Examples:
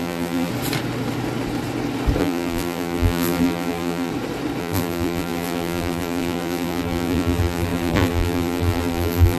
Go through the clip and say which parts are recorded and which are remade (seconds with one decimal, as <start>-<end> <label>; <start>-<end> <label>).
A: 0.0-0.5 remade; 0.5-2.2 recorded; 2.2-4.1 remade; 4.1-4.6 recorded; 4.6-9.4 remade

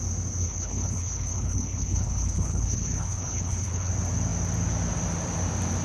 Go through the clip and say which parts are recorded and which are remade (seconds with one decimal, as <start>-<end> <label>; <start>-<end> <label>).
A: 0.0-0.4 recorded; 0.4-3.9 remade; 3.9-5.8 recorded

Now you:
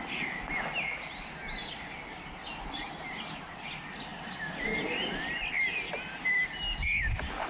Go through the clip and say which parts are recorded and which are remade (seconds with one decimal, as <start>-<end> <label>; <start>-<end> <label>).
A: 0.0-7.5 recorded

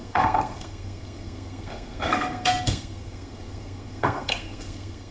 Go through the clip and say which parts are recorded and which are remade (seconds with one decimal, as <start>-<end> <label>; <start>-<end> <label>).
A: 0.0-5.1 remade